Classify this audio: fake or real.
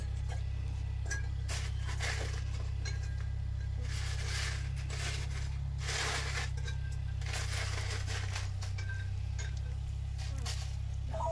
real